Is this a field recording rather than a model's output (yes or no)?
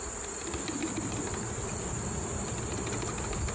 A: yes